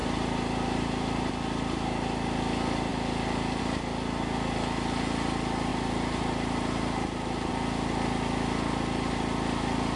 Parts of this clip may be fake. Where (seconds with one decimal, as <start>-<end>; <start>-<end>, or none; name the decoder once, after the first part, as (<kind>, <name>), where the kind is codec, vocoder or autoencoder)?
0.0-1.3 (vocoder, BigVGAN v2); 5.7-7.5